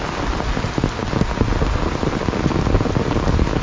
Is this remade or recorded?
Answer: recorded